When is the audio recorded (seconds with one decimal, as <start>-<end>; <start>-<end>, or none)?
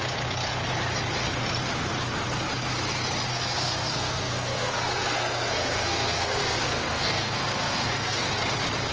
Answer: 0.0-3.3; 8.3-8.9